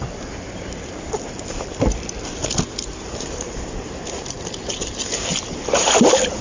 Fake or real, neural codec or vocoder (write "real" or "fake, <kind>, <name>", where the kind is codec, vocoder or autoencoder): real